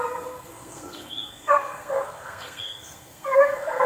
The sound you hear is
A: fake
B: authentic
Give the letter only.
A